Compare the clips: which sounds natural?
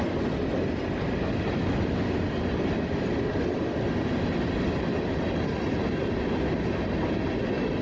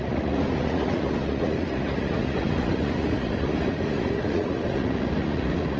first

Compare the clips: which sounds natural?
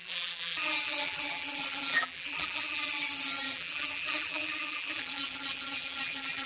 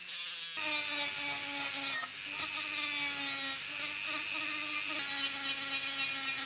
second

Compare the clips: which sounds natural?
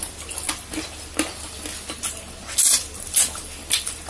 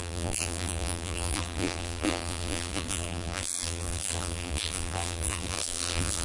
first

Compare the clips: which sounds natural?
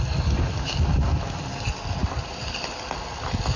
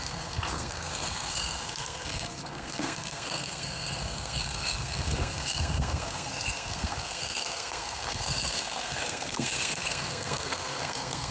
first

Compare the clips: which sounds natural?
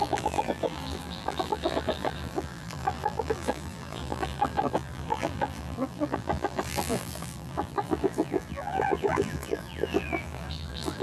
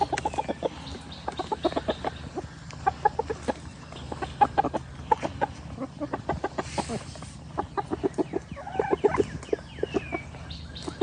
second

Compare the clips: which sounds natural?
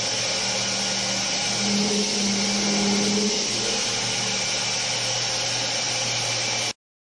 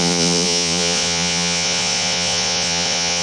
first